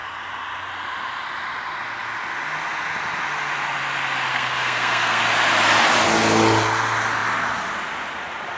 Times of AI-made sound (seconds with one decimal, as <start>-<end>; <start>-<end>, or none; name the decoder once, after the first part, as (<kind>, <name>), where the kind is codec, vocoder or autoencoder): 4.3-5.2 (codec, SNAC)